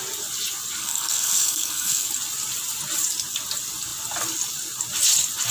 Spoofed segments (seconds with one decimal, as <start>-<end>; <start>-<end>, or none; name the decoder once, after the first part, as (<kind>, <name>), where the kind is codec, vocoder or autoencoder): 0.8-2.1 (codec, SNAC)